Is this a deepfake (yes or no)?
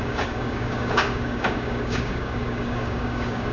yes